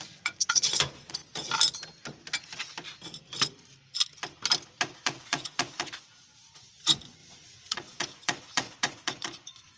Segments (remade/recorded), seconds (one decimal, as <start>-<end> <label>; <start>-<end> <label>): 0.0-1.2 remade; 1.2-5.0 recorded; 5.0-9.8 remade

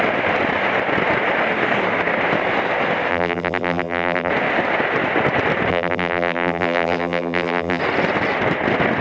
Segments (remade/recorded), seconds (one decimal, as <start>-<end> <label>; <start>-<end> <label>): 0.0-3.1 recorded; 3.1-4.3 remade; 4.3-5.7 recorded; 5.7-7.8 remade; 7.8-9.0 recorded

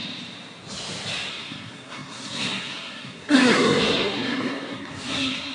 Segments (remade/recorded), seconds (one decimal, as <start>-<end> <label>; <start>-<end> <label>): 0.0-1.3 recorded; 1.3-5.5 remade

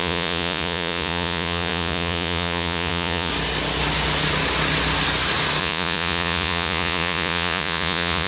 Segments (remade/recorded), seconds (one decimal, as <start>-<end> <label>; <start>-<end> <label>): 0.0-3.3 remade; 3.3-5.6 recorded; 5.6-8.3 remade

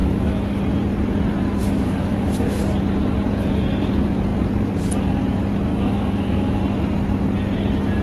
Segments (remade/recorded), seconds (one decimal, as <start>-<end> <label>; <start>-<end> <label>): 0.0-0.6 remade; 0.6-1.6 recorded; 1.6-2.6 remade; 2.6-5.7 recorded; 5.7-6.6 remade; 6.6-8.0 recorded

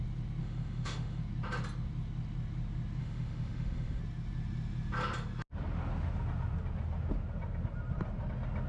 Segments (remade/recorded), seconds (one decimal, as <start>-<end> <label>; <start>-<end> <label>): 0.0-0.4 recorded; 0.4-1.2 remade; 1.2-3.0 recorded; 3.0-4.0 remade; 4.0-8.7 recorded

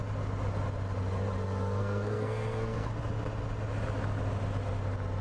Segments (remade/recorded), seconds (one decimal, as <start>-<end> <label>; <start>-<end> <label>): 0.0-1.8 recorded; 1.8-2.9 remade; 2.9-5.2 recorded